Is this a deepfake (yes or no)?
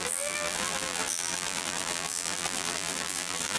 yes